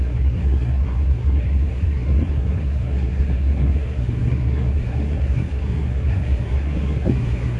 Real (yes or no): no